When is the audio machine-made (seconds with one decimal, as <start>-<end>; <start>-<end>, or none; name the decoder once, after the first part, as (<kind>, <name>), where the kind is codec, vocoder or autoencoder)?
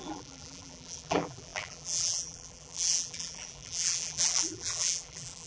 0.0-5.5 (vocoder, BigVGAN v2)